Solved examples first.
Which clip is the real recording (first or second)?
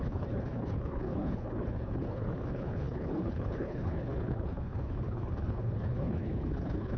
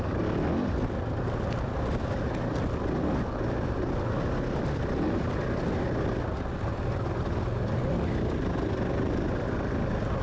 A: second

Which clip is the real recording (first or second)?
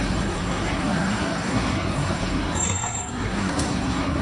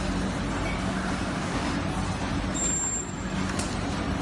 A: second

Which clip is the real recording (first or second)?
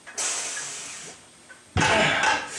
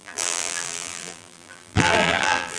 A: first